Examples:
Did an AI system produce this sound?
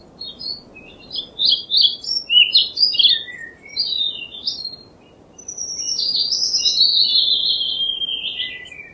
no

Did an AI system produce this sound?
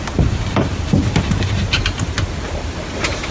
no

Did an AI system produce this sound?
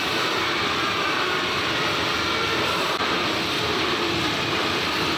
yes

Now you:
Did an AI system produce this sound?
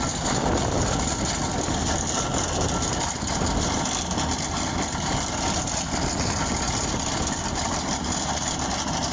no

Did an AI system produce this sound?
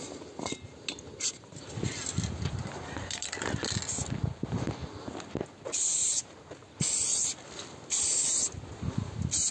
no